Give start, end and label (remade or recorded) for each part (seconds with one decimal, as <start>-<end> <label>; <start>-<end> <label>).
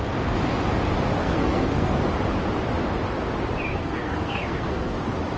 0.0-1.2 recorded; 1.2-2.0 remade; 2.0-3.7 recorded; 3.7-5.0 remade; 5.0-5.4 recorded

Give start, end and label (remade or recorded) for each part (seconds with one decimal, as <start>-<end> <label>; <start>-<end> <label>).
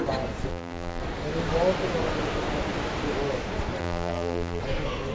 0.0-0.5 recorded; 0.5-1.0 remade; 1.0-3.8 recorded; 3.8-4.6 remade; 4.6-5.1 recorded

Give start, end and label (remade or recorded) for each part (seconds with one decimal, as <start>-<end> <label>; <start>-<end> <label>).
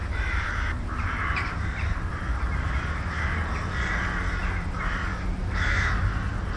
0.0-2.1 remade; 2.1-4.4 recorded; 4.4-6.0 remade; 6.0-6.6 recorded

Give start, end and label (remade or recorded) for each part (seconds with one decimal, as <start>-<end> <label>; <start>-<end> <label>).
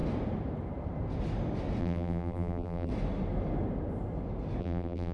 0.0-1.8 recorded; 1.8-2.9 remade; 2.9-4.6 recorded; 4.6-5.1 remade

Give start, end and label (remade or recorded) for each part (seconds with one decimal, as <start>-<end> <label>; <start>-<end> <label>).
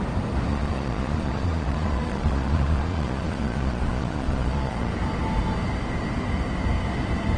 0.0-0.5 recorded; 0.5-4.9 remade; 4.9-7.4 recorded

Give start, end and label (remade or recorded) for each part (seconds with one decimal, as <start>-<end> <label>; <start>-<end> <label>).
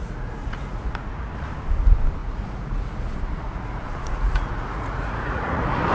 0.0-1.3 remade; 1.3-2.2 recorded; 2.2-5.9 remade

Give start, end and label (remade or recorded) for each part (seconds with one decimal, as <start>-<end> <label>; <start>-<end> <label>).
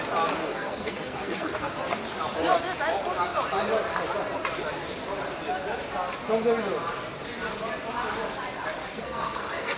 0.0-0.4 recorded; 0.4-1.7 remade; 1.7-8.9 recorded; 8.9-9.8 remade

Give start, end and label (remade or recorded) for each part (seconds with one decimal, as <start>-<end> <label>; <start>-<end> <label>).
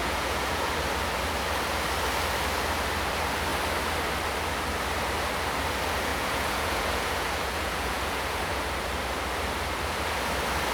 0.0-0.7 remade; 0.7-6.1 recorded; 6.1-8.6 remade; 8.6-10.7 recorded